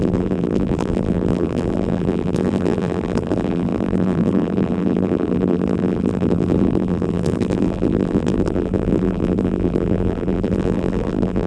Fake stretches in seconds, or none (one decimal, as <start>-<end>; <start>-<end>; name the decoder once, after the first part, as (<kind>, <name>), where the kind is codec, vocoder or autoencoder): 0.0-11.5 (vocoder, BigVGAN v2)